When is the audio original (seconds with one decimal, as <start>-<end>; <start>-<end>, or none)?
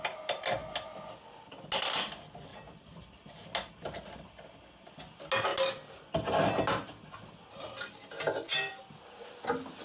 0.0-9.8